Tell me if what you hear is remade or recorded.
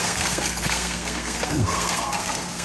remade